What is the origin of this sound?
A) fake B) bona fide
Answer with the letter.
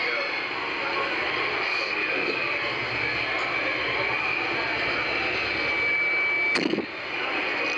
B